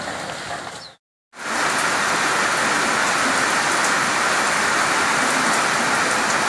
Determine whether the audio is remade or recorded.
recorded